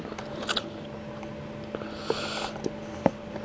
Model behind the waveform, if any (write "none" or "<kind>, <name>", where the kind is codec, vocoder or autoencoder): none